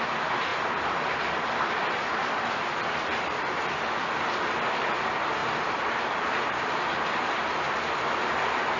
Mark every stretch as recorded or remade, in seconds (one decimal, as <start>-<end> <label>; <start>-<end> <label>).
0.0-0.5 recorded; 0.5-3.7 remade; 3.7-8.8 recorded